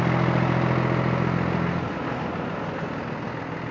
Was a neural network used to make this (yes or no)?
no